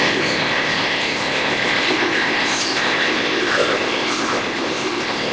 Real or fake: fake